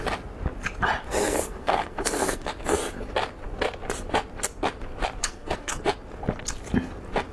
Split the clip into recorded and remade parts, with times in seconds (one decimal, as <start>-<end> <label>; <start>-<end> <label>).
0.0-1.0 recorded; 1.0-2.5 remade; 2.5-5.2 recorded; 5.2-5.8 remade; 5.8-7.3 recorded